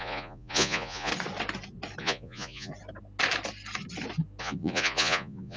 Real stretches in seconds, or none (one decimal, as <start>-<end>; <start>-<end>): 1.1-2.0; 2.7-4.4